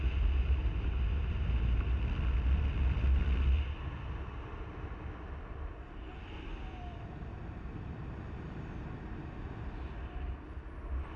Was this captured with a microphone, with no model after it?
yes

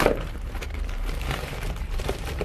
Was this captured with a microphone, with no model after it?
no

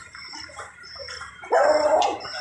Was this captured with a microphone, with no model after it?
no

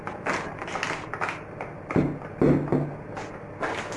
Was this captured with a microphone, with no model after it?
yes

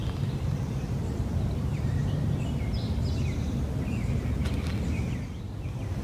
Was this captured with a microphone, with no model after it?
yes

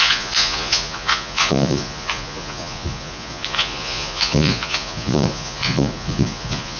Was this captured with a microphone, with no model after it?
no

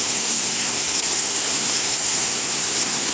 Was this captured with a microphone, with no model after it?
no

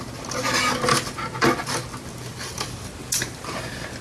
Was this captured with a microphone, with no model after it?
yes